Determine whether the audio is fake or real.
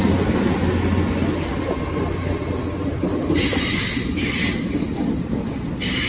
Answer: real